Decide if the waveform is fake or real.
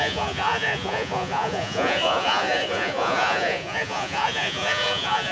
fake